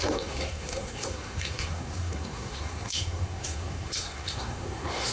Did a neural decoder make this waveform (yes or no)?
yes